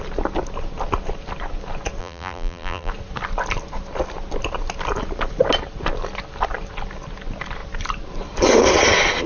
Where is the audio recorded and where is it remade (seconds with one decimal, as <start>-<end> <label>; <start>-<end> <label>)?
0.0-2.0 recorded; 2.0-2.9 remade; 2.9-9.3 recorded